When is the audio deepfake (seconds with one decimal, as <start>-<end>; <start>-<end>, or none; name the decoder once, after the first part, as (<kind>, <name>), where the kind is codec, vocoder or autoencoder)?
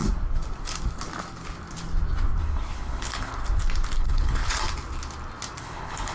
2.4-3.3 (codec, HILCodec); 4.0-4.4; 5.6-6.1